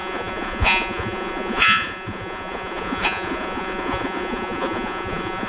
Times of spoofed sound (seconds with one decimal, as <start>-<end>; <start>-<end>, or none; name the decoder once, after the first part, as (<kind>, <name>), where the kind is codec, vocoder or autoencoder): 0.0-5.5 (vocoder, Vocos)